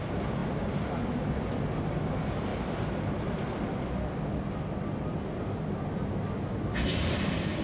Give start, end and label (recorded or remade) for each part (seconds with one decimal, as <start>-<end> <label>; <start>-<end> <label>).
0.0-7.6 recorded